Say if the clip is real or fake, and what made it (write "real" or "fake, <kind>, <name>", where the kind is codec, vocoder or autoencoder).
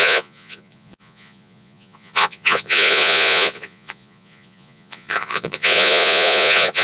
fake, vocoder, Vocos